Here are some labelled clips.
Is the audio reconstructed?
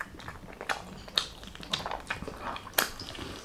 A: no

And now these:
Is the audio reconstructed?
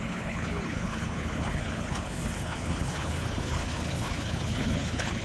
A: yes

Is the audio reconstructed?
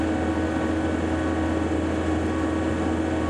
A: no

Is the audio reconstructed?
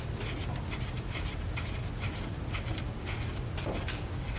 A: no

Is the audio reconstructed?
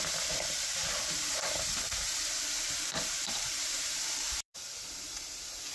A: yes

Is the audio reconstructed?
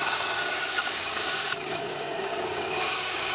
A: yes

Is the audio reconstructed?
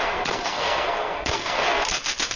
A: yes